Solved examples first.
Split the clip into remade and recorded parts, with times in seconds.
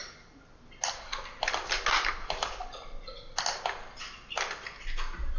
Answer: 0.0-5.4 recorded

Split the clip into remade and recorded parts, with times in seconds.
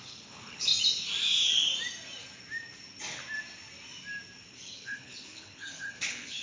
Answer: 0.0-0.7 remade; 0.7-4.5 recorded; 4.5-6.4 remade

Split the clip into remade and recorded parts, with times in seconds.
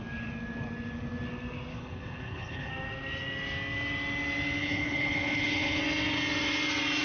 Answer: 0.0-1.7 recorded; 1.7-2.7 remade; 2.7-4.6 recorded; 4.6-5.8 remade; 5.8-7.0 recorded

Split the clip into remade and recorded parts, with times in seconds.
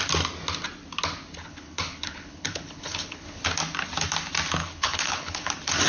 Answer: 0.0-1.4 recorded; 1.4-3.4 remade; 3.4-4.6 recorded; 4.6-5.5 remade; 5.5-5.9 recorded